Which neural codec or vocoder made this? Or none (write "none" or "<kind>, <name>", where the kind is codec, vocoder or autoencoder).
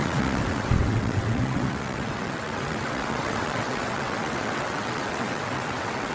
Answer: vocoder, WaveNeXt